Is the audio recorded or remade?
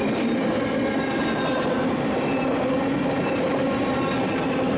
recorded